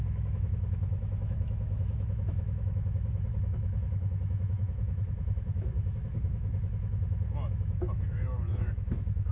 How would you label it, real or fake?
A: fake